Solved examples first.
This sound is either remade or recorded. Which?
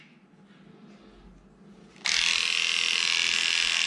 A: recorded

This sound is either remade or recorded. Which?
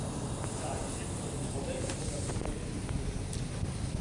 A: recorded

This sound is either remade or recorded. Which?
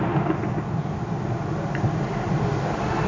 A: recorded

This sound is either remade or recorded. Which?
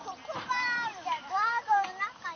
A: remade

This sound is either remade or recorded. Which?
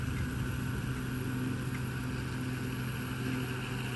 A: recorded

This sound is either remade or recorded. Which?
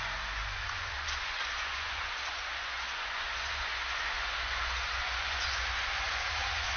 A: remade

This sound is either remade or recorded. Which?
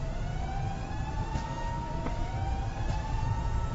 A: recorded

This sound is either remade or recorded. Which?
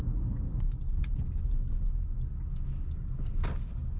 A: recorded